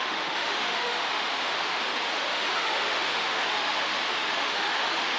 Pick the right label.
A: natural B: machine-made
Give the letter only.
B